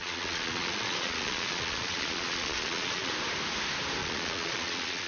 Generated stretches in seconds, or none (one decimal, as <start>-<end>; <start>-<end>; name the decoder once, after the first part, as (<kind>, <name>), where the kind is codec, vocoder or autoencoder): 0.0-3.1 (vocoder, Vocos); 4.0-5.1